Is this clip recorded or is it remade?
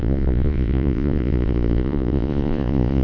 remade